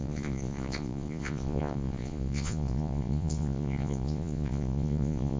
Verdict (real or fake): fake